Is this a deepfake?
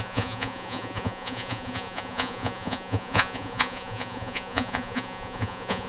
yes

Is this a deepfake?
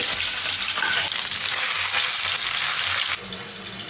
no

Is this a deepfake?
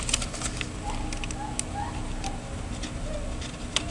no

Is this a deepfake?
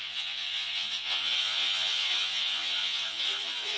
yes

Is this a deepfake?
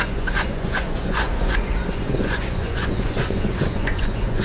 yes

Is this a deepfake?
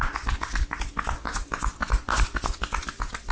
no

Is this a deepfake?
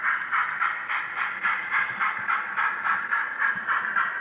no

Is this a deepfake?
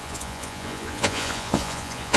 yes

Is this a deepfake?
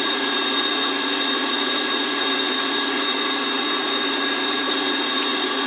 yes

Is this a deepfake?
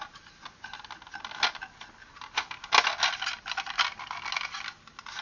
no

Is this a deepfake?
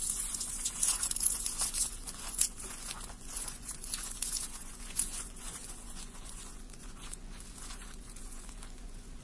yes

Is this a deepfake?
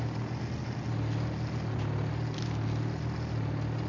no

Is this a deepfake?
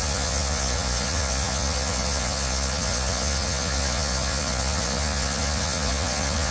yes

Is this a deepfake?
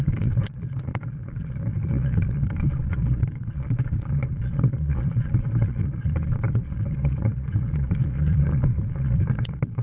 yes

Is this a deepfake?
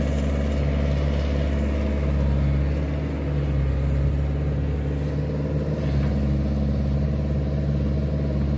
no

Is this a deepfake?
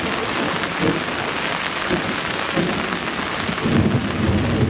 no